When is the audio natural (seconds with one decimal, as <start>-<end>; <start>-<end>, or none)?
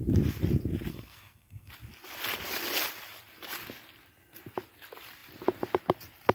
0.0-0.9; 1.7-6.3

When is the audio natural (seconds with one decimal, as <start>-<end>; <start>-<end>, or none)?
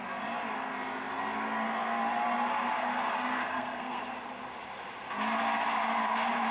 0.0-3.4; 4.0-6.5